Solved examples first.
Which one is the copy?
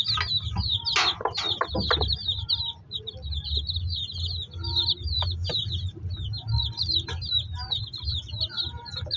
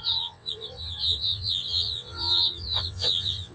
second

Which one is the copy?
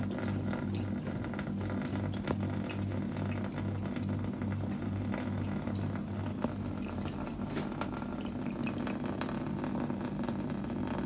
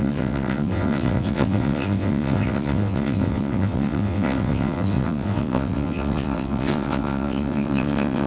second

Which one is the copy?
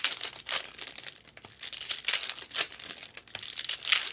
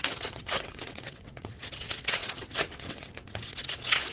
second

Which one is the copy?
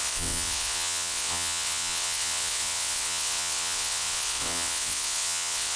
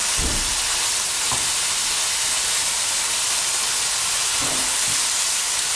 first